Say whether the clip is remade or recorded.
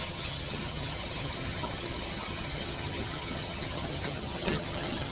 remade